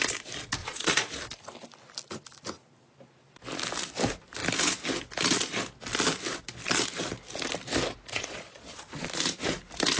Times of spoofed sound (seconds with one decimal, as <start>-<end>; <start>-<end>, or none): 0.6-1.1; 8.1-9.1